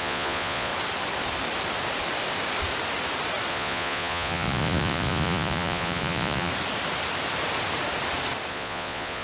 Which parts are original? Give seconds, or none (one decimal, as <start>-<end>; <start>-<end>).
0.7-3.5; 6.5-8.5